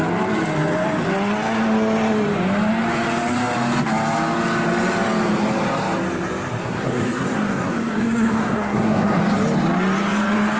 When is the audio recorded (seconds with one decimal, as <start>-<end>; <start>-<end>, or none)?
0.0-6.6; 9.2-10.6

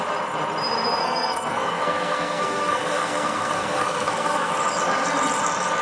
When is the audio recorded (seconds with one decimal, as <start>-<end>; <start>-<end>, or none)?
0.0-1.0; 4.5-5.8

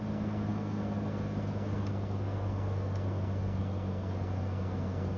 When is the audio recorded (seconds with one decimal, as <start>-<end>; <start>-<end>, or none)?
none

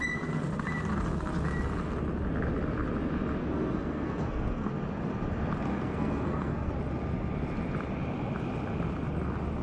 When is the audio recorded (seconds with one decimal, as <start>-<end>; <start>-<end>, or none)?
0.0-3.4; 4.7-5.7; 6.7-9.6